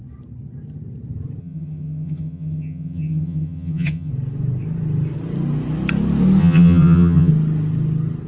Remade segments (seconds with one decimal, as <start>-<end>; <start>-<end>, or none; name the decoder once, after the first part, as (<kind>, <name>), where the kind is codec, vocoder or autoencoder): 1.4-4.1 (vocoder, HiFi-GAN); 6.4-7.3